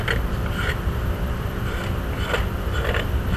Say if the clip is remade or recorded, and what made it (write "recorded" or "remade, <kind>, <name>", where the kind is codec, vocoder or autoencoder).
remade, vocoder, BigVGAN v2